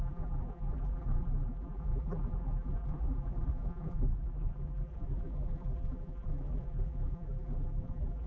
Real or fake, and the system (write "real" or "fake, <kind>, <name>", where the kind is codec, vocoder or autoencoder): fake, vocoder, BigVGAN v2